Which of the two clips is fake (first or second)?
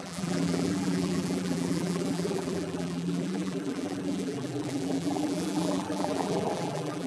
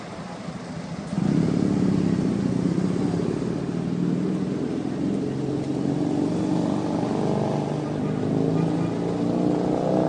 first